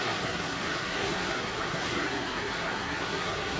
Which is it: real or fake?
fake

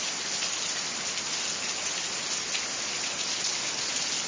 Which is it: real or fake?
real